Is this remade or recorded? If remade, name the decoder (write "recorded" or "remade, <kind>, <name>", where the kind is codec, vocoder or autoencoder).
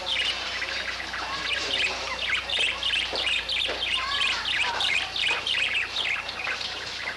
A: remade, vocoder, BigVGAN v2